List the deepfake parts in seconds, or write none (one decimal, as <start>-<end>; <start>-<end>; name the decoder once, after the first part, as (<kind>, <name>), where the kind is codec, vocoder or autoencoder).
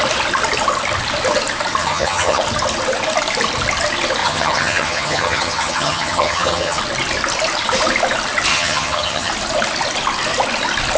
1.8-2.4 (vocoder, HiFi-GAN); 4.2-6.8; 8.5-9.3